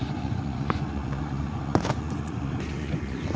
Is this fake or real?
fake